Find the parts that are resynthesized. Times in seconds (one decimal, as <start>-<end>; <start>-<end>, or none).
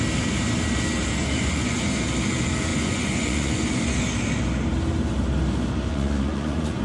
1.1-1.9; 2.7-3.9; 5.9-6.8